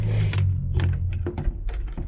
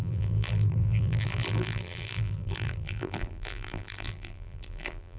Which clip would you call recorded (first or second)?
first